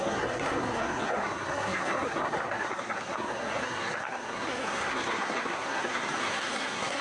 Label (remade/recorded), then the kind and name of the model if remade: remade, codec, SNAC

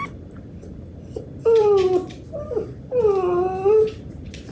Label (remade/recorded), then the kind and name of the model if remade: recorded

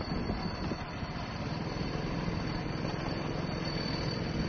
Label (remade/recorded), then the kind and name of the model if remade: recorded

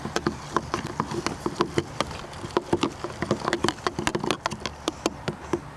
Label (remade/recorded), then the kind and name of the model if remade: recorded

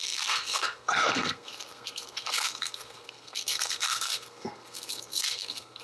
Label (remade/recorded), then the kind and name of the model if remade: remade, codec, SNAC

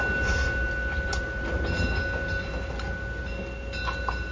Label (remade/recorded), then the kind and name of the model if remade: recorded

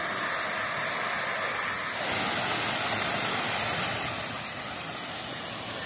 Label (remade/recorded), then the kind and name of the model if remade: recorded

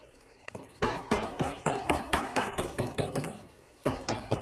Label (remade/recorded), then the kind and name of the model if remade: remade, codec, SNAC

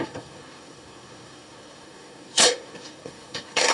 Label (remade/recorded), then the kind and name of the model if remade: remade, codec, SNAC